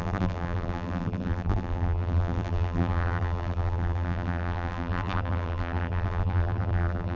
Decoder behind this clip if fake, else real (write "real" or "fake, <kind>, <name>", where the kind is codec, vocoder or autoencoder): fake, vocoder, BigVGAN v2